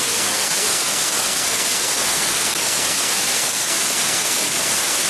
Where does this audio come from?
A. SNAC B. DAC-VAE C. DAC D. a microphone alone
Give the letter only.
A